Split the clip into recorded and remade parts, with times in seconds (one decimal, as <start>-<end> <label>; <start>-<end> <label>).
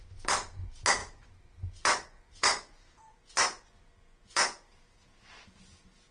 0.0-1.0 recorded; 1.0-4.7 remade; 4.7-6.1 recorded